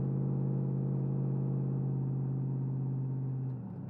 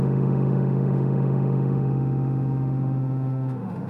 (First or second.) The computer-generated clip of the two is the second